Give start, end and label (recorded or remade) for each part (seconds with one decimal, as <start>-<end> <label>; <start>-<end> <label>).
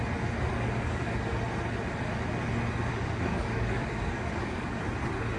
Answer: 0.0-0.5 recorded; 0.5-1.3 remade; 1.3-2.9 recorded; 2.9-4.8 remade; 4.8-5.4 recorded